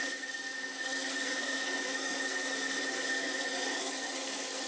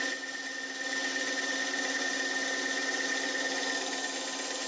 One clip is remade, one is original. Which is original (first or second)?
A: second